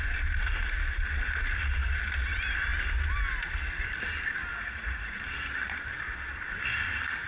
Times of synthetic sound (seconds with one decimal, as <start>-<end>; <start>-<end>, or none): 4.5-5.2